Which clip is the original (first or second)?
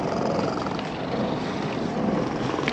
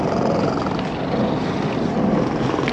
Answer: second